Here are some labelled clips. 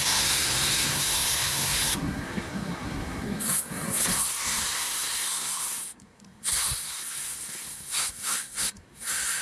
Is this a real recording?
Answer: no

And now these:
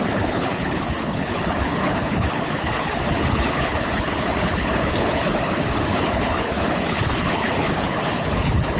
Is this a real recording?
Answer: no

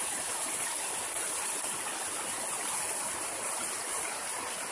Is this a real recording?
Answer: yes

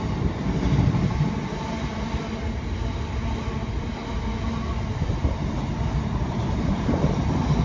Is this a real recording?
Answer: yes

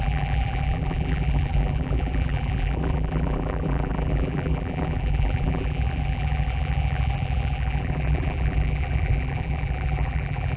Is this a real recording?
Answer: no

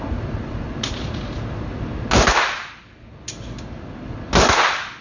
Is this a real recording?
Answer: yes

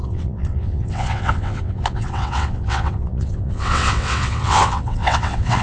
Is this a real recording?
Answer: no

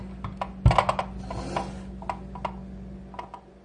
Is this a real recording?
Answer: yes